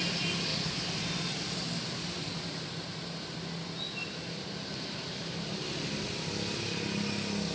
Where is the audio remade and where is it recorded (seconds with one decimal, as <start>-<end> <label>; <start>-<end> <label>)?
0.0-7.5 recorded